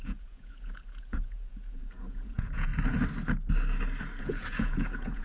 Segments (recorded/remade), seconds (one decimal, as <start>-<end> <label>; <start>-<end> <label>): 0.0-2.7 remade; 2.7-4.2 recorded; 4.2-5.2 remade